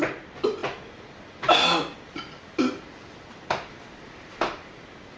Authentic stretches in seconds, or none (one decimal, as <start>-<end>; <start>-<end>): 0.0-5.2